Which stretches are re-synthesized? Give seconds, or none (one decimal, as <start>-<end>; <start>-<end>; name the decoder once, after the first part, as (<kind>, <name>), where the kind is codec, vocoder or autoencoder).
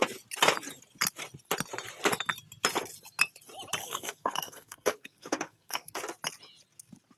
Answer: 3.8-6.0 (codec, SNAC)